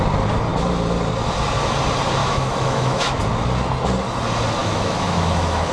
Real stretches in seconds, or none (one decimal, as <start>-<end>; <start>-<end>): 0.0-2.2; 3.2-4.6